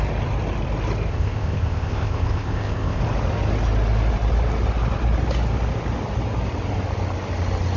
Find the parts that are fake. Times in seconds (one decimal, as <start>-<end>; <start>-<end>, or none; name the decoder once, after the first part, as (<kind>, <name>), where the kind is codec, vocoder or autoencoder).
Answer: 1.1-3.0 (codec, ZipCodec)